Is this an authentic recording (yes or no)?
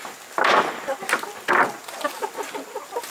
yes